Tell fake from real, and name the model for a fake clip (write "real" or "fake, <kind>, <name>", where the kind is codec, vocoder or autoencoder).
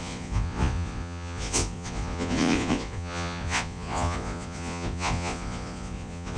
fake, vocoder, Vocos